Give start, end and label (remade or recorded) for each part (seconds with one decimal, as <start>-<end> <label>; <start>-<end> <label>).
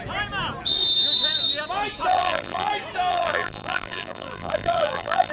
0.0-2.1 recorded; 2.1-2.7 remade; 2.7-3.1 recorded; 3.1-5.3 remade